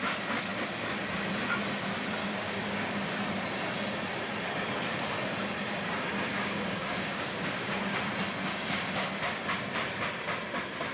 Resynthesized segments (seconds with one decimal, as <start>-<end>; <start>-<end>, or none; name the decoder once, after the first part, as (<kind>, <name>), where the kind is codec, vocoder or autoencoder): 2.2-3.1 (codec, DAC); 6.3-7.8